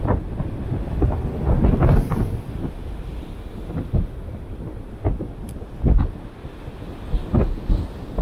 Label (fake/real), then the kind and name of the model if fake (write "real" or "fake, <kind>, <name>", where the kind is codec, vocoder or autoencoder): real